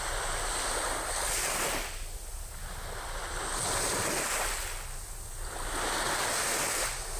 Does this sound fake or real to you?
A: real